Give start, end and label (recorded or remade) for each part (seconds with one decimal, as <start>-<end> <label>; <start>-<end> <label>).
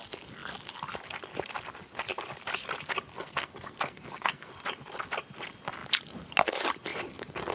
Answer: 0.0-3.1 recorded; 3.1-4.5 remade; 4.5-7.5 recorded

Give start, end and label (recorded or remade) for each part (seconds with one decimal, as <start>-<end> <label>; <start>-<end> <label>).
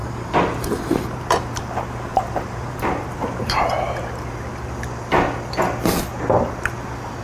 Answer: 0.0-1.6 remade; 1.6-2.1 recorded; 2.1-3.7 remade; 3.7-7.2 recorded